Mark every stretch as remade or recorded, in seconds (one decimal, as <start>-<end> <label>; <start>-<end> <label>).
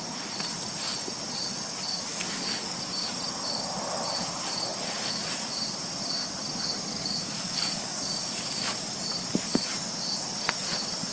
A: 0.0-2.1 recorded; 2.1-2.8 remade; 2.8-6.9 recorded; 6.9-8.8 remade; 8.8-11.1 recorded